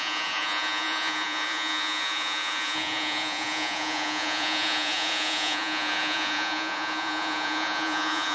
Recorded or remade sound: remade